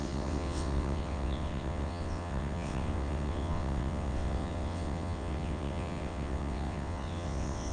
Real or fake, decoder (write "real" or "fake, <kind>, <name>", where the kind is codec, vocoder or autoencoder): fake, vocoder, WaveNeXt